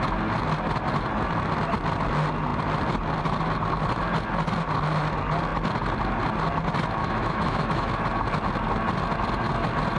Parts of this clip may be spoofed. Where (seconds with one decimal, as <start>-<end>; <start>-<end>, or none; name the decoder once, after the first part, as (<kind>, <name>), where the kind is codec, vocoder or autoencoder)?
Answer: 7.0-7.9 (autoencoder, DAC-VAE)